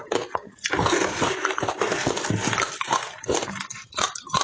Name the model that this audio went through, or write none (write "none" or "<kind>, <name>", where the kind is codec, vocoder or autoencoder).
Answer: none